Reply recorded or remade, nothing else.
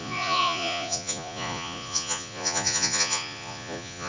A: remade